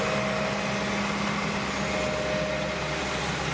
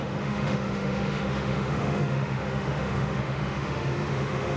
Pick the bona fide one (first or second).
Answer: first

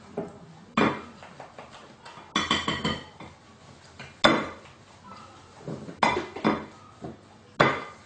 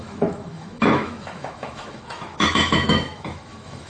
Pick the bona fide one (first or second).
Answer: first